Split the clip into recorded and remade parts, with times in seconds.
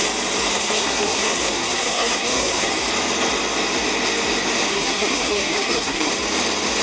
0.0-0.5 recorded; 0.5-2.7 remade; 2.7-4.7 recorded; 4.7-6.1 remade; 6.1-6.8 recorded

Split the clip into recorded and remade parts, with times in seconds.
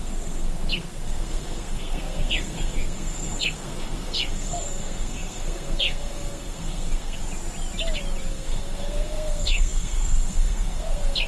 0.0-7.2 remade; 7.2-8.3 recorded; 8.3-11.3 remade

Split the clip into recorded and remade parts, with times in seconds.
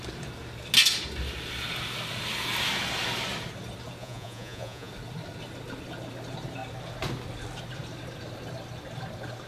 0.0-4.0 recorded; 4.0-4.9 remade; 4.9-9.5 recorded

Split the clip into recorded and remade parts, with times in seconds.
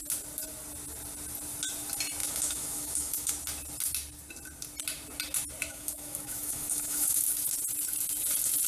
0.0-2.2 recorded; 2.2-3.3 remade; 3.3-5.6 recorded; 5.6-7.3 remade; 7.3-8.7 recorded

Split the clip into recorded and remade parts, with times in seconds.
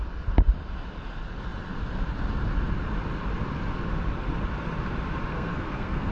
0.0-5.3 recorded; 5.3-6.1 remade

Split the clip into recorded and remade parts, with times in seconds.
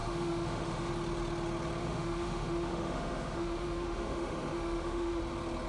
0.0-0.9 remade; 0.9-1.8 recorded; 1.8-5.2 remade; 5.2-5.7 recorded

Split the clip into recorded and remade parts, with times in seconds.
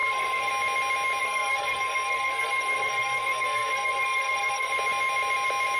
0.0-0.5 remade; 0.5-1.2 recorded; 1.2-4.7 remade; 4.7-5.8 recorded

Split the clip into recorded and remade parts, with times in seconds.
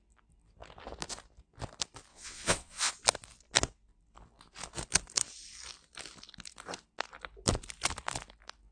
0.0-2.1 recorded; 2.1-2.9 remade; 2.9-8.7 recorded